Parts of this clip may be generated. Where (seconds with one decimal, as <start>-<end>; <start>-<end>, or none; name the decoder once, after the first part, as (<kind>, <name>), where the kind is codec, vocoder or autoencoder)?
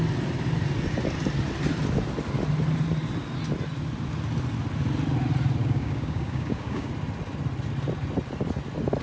5.6-6.9 (codec, DAC)